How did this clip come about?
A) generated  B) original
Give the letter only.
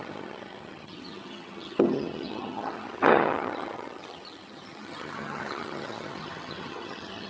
A